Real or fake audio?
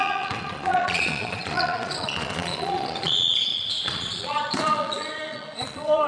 fake